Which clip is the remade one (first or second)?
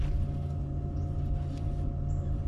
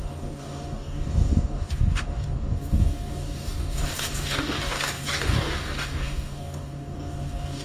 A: second